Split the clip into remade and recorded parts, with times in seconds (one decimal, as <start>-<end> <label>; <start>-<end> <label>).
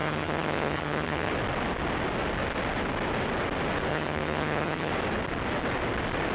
0.0-1.3 remade; 1.3-3.9 recorded; 3.9-4.9 remade; 4.9-6.3 recorded